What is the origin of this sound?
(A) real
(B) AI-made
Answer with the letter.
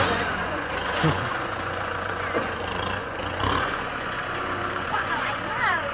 B